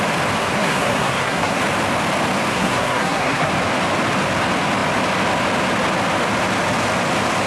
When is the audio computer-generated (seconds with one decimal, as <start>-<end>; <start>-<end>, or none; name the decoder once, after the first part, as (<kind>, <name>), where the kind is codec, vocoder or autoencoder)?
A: 0.4-1.6 (codec, SNAC); 2.5-3.5